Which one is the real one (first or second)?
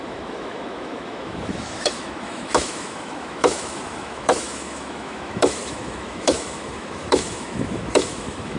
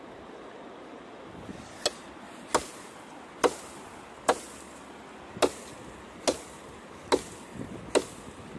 second